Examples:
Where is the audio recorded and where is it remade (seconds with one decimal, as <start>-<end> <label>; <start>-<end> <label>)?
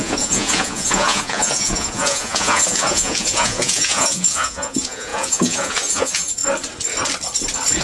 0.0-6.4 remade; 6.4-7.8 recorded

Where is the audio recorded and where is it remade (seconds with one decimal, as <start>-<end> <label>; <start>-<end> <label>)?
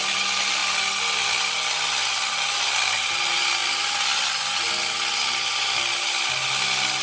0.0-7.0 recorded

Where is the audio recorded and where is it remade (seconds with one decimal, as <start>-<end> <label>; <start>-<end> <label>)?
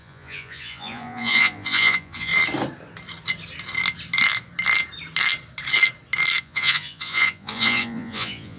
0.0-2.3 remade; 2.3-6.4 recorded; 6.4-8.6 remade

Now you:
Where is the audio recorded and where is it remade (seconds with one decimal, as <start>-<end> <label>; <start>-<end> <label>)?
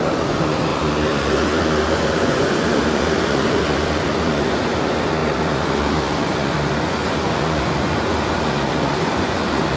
0.0-9.8 remade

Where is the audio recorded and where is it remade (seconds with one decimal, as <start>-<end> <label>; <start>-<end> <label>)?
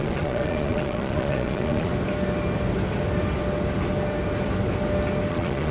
0.0-1.9 remade; 1.9-5.3 recorded; 5.3-5.7 remade